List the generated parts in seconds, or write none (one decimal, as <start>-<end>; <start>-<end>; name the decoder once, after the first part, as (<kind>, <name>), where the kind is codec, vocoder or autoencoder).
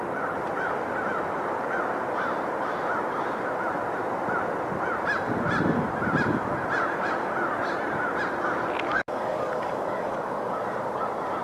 8.9-10.6 (codec, DAC)